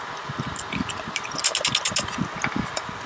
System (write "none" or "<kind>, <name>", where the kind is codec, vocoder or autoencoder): none